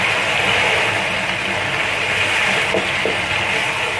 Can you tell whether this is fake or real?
real